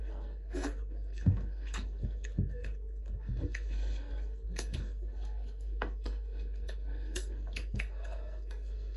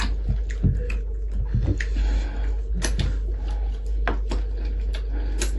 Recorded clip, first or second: second